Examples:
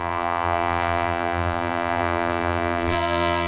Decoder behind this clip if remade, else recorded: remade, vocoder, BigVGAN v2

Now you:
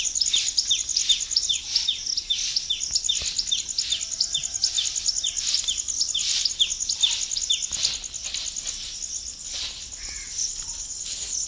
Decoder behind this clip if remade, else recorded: recorded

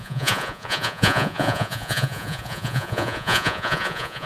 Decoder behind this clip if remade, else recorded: remade, vocoder, Vocos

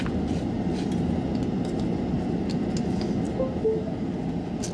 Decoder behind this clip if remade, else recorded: recorded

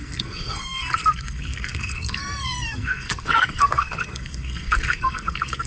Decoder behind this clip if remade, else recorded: remade, codec, SNAC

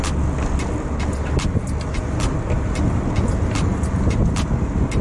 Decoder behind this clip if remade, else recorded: recorded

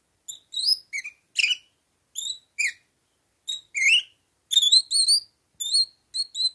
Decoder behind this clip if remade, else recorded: recorded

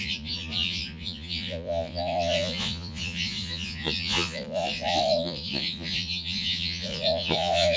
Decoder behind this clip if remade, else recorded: remade, vocoder, Vocos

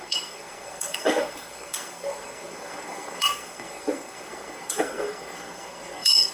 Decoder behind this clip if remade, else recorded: remade, codec, SNAC